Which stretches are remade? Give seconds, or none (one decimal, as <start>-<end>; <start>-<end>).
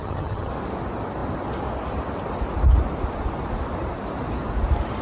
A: 0.0-0.5